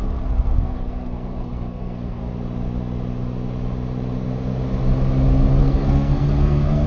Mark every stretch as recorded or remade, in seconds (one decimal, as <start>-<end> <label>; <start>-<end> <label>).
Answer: 0.0-2.2 remade; 2.2-5.6 recorded; 5.6-6.9 remade